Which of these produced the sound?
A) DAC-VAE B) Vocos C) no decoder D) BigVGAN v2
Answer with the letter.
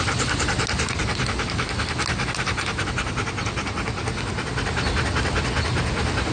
C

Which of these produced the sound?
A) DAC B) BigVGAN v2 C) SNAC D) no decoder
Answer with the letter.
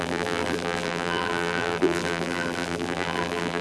B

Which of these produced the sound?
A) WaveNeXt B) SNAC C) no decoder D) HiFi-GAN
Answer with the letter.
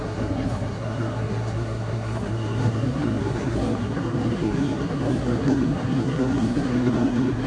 B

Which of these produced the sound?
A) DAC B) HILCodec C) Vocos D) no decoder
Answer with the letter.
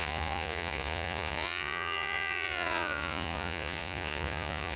C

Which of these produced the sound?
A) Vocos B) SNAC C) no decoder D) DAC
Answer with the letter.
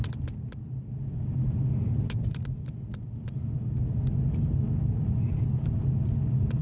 C